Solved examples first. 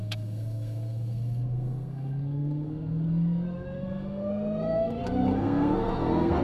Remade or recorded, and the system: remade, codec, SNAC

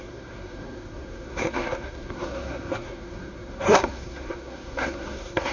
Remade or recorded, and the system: remade, codec, SNAC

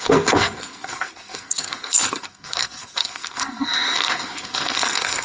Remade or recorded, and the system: remade, codec, SNAC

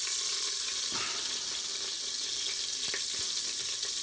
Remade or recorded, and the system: recorded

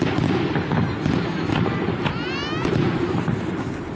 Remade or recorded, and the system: recorded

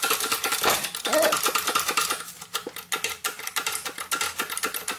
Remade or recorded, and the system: recorded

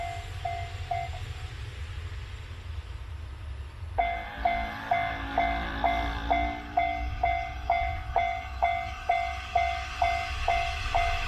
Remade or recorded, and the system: recorded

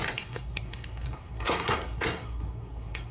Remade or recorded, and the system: remade, codec, SNAC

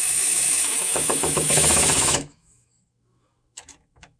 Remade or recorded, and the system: remade, autoencoder, DAC-VAE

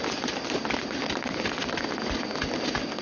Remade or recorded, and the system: recorded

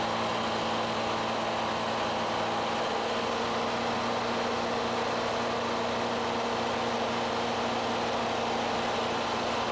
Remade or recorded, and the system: recorded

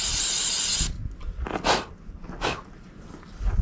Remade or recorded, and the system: recorded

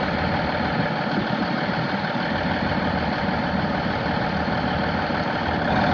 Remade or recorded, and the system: remade, vocoder, BigVGAN v2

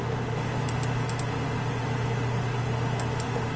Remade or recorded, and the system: recorded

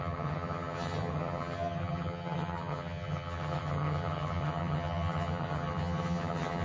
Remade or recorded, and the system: remade, vocoder, HiFi-GAN